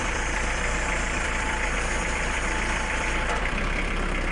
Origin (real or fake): fake